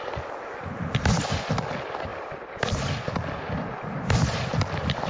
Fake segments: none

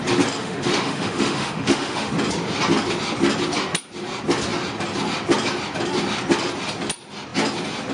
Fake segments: 0.4-2.1

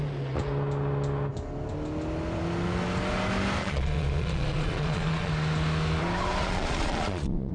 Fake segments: 3.6-5.3; 6.4-7.5